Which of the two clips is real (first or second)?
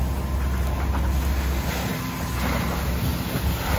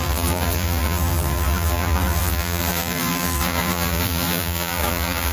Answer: first